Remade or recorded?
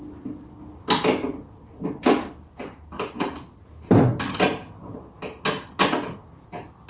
recorded